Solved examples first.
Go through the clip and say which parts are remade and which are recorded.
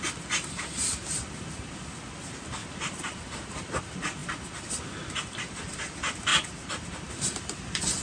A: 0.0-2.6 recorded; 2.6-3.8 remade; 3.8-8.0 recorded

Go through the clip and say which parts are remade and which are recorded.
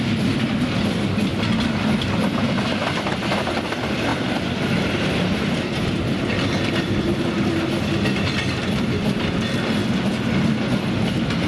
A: 0.0-11.5 recorded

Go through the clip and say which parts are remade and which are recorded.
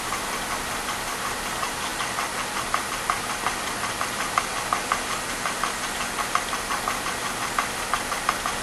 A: 0.0-8.6 recorded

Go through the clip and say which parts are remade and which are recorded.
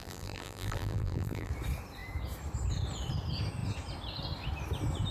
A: 0.0-1.5 remade; 1.5-5.1 recorded